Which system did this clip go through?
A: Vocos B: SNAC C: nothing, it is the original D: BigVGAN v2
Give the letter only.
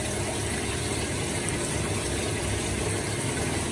C